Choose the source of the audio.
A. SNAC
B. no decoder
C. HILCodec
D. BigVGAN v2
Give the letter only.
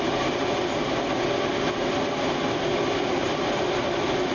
B